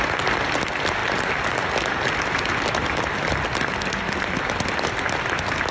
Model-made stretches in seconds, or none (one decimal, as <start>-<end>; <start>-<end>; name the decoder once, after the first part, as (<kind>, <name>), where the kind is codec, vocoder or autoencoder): none